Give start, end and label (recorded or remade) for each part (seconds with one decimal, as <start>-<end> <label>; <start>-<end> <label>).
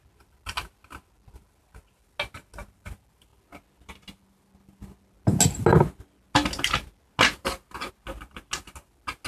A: 0.0-9.3 recorded